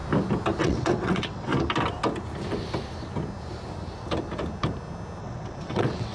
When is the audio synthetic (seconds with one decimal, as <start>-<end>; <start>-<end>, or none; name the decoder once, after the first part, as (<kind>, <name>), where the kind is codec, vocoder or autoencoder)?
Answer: 0.6-1.5 (vocoder, WaveNeXt); 5.2-6.1